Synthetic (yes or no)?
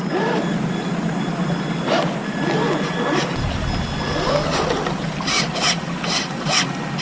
no